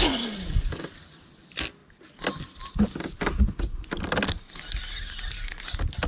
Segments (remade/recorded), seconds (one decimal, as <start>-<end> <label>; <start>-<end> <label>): 0.0-6.1 recorded